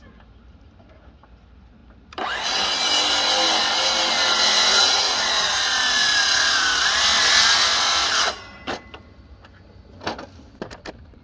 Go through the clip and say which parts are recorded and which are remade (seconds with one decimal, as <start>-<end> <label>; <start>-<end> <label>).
0.0-4.7 recorded; 4.7-5.5 remade; 5.5-11.2 recorded